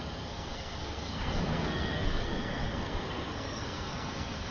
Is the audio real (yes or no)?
no